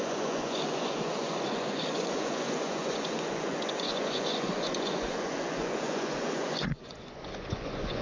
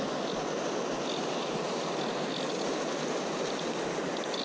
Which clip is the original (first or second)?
second